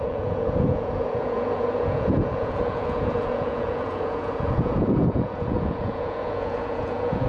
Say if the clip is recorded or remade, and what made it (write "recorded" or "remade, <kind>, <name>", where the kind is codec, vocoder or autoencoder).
remade, vocoder, Vocos